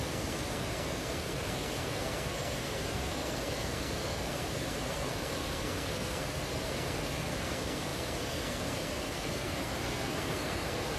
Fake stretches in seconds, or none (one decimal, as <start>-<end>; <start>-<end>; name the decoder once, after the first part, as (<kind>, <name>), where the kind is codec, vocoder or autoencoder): 0.0-11.0 (codec, SNAC)